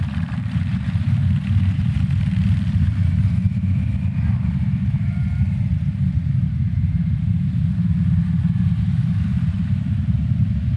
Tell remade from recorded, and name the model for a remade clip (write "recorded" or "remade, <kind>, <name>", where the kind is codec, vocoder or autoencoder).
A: remade, vocoder, BigVGAN v2